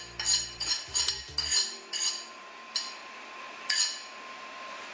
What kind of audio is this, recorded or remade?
recorded